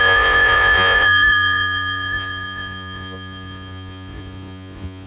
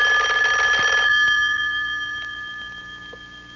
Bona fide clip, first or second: second